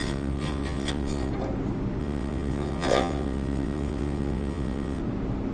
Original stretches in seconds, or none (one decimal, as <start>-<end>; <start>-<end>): 1.3-2.0; 5.0-5.5